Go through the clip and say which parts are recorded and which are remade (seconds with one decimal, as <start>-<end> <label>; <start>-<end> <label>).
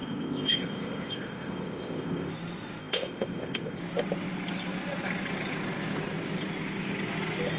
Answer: 0.0-2.3 remade; 2.3-2.8 recorded; 2.8-3.8 remade; 3.8-7.6 recorded